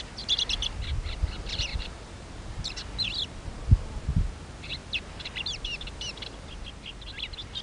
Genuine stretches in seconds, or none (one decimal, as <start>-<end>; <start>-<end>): 0.0-1.7; 2.6-7.6